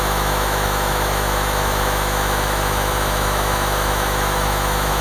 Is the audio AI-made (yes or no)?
yes